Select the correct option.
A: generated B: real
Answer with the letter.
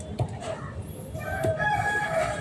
B